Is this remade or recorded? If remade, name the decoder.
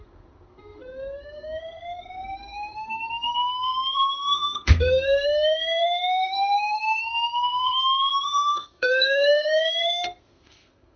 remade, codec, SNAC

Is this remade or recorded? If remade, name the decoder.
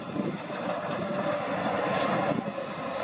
remade, vocoder, BigVGAN v2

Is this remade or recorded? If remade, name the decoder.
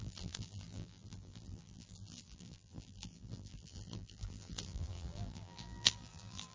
remade, vocoder, BigVGAN v2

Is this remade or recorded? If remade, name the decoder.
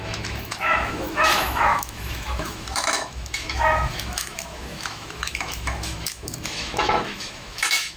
remade, autoencoder, DAC-VAE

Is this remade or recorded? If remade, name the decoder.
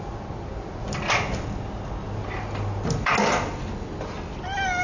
recorded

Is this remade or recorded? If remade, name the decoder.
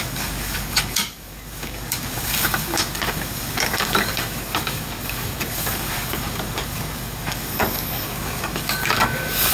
remade, codec, DAC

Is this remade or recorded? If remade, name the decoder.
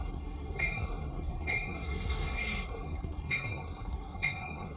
remade, codec, SNAC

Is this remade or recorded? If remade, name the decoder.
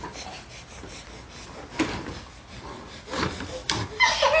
recorded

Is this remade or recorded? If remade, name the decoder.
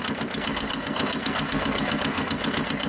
remade, codec, SNAC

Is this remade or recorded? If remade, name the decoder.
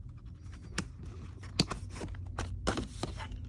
recorded